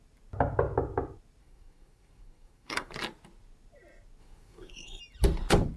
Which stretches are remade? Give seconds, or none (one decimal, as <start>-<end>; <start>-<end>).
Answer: 1.4-2.9; 4.2-5.0